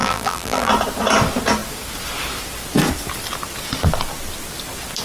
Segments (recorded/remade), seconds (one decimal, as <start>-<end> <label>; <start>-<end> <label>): 0.0-0.7 remade; 0.7-5.0 recorded